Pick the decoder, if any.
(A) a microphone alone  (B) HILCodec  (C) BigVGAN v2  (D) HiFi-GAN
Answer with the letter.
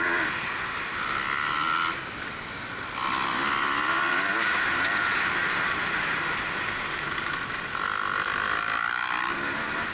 A